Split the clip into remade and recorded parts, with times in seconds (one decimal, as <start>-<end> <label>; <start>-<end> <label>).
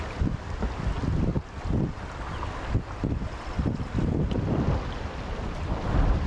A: 0.0-6.3 recorded